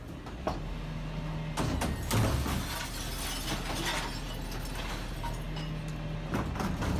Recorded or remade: recorded